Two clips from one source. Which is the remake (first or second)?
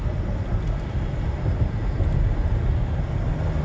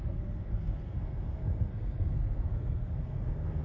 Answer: second